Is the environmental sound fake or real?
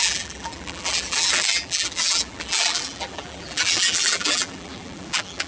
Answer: fake